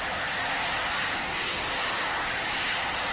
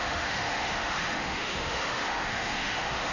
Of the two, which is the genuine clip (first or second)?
first